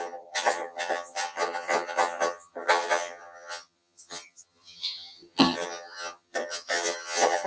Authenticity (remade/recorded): remade